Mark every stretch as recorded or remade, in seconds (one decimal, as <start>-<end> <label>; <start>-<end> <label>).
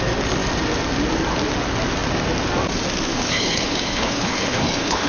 0.0-3.1 recorded; 3.1-5.1 remade